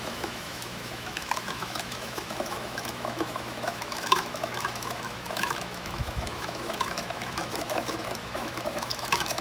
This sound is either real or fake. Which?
fake